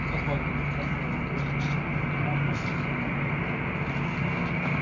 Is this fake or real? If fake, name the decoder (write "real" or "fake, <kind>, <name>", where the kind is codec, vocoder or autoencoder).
real